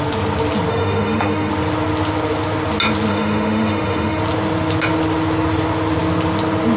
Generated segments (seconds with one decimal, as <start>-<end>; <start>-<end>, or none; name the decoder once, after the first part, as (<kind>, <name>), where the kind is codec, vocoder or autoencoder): 0.7-1.5 (autoencoder, DAC-VAE); 3.1-4.2